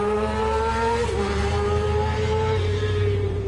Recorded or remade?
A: remade